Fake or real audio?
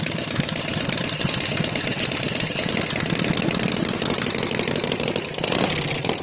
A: real